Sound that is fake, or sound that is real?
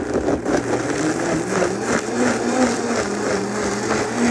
real